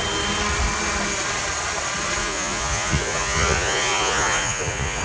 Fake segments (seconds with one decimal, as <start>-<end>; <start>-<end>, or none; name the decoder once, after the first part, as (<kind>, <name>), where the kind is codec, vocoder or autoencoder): 2.2-5.0 (vocoder, Vocos)

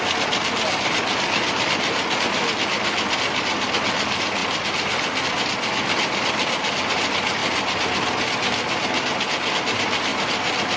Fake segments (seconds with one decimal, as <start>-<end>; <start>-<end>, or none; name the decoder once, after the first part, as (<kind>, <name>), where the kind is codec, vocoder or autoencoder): none

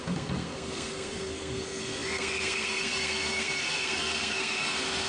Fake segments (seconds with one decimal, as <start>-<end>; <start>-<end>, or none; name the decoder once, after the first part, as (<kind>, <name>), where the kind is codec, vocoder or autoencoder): 0.0-5.1 (codec, SNAC)

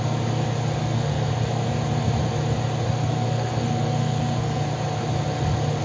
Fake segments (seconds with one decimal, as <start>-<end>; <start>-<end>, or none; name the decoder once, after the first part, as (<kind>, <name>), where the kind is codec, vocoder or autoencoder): 0.8-1.3 (codec, SNAC); 3.0-4.6

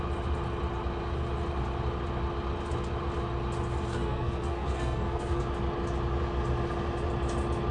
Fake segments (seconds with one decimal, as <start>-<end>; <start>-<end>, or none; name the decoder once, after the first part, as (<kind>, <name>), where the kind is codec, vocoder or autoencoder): 3.9-5.4 (codec, SNAC)

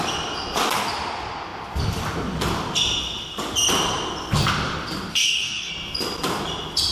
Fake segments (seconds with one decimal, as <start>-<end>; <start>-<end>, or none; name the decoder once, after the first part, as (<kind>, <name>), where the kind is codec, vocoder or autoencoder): 5.1-5.7 (codec, DAC)

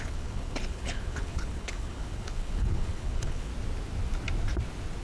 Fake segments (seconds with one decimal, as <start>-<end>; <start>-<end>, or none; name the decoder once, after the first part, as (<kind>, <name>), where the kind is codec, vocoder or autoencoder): 0.0-3.5 (codec, HILCodec)

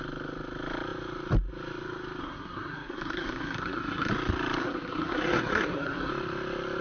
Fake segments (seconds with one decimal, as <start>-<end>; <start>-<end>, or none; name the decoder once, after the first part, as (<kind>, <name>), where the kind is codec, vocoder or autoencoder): 2.2-4.1 (codec, SNAC); 4.6-6.1